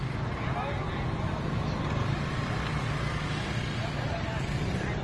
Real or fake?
real